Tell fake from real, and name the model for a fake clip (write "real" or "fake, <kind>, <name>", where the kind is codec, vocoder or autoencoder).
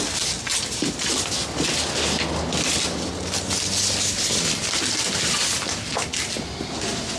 real